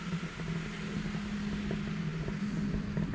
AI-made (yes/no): no